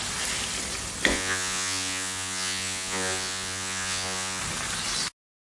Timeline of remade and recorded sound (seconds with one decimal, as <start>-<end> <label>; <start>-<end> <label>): 0.0-1.1 recorded; 1.1-4.4 remade; 4.4-5.5 recorded